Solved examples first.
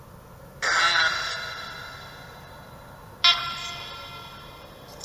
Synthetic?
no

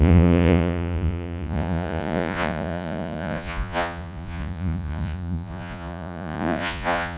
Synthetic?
yes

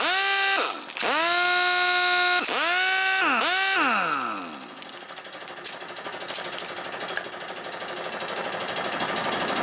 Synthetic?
no